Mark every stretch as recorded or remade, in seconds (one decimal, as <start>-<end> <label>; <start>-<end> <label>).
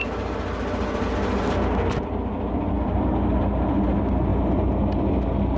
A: 0.0-5.6 recorded